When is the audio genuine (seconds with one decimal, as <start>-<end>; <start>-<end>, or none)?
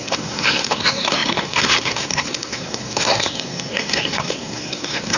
none